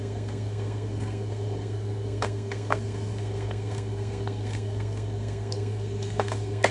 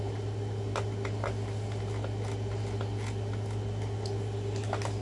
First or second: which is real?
second